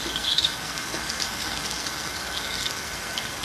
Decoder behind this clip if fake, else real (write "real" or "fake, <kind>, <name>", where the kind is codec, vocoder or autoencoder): fake, codec, SNAC